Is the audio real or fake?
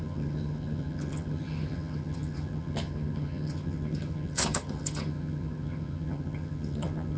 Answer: fake